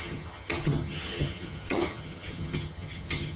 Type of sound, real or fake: fake